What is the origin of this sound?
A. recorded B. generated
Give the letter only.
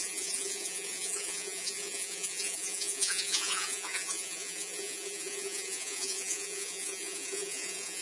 B